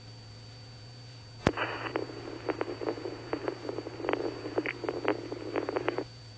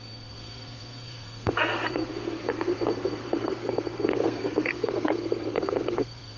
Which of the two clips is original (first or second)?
first